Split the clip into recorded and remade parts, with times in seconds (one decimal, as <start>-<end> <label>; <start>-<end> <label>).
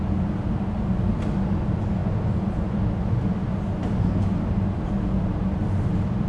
0.0-6.3 recorded